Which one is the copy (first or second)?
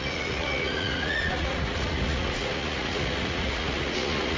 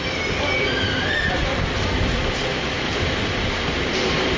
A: first